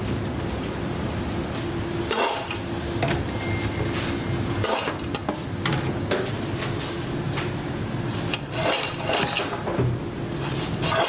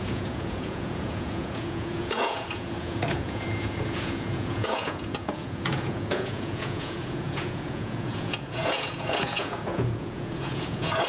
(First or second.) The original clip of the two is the first